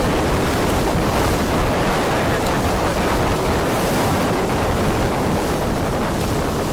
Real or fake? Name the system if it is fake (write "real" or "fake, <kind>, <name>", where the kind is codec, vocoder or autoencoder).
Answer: real